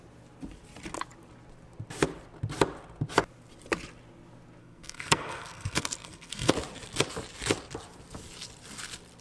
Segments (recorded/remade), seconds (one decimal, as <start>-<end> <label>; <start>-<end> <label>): 0.0-4.6 recorded; 4.6-6.5 remade; 6.5-9.2 recorded